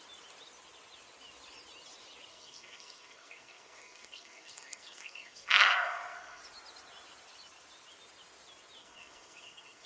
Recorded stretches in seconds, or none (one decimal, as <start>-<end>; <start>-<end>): 0.0-2.3; 6.4-8.8